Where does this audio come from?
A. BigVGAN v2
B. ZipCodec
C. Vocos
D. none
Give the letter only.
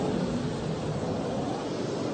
D